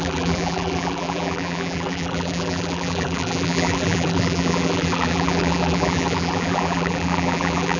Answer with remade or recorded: remade